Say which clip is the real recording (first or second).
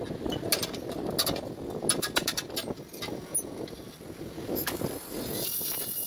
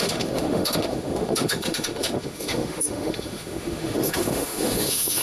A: first